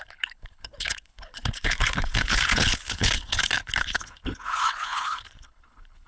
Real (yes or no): no